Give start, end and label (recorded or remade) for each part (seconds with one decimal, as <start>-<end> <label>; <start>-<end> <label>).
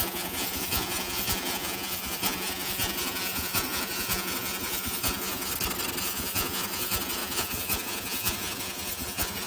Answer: 0.0-5.5 remade; 5.5-6.0 recorded; 6.0-9.5 remade